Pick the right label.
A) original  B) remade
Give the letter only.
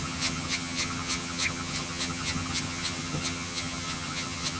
B